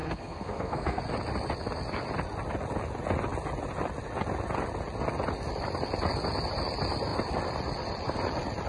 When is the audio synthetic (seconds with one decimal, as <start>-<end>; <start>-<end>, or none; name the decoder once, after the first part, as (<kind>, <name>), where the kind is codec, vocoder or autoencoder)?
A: 0.0-1.0 (codec, SNAC)